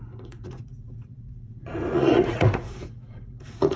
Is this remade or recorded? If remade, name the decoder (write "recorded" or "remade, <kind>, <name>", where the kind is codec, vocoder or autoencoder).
remade, vocoder, Vocos